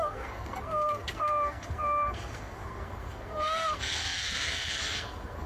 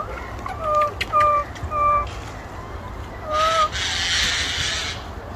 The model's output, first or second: first